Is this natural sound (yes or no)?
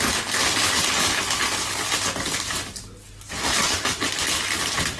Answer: yes